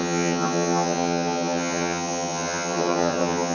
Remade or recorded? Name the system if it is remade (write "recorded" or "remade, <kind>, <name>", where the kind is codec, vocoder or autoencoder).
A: remade, vocoder, HiFi-GAN